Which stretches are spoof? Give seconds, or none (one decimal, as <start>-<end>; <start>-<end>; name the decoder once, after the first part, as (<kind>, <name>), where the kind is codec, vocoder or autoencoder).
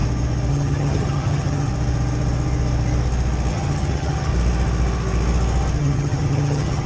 0.5-1.7 (vocoder, HiFi-GAN); 3.5-4.3; 5.8-6.9